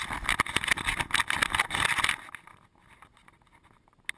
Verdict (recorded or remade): recorded